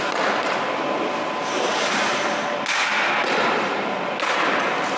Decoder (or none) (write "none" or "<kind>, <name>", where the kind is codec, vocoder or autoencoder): none